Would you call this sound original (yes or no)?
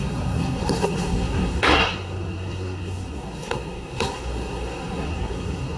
no